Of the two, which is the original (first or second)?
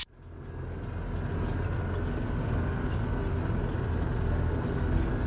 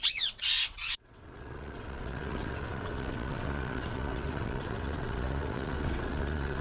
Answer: first